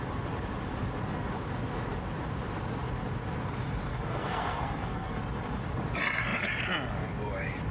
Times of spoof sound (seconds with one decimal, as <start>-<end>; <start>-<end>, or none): 3.9-5.2